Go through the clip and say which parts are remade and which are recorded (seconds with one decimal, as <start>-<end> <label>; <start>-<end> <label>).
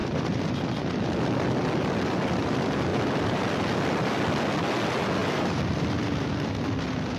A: 0.0-0.5 remade; 0.5-2.9 recorded; 2.9-3.5 remade; 3.5-5.2 recorded; 5.2-5.9 remade; 5.9-7.2 recorded